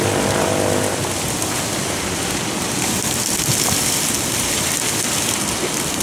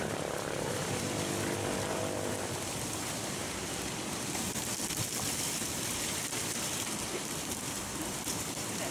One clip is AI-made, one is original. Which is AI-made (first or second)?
second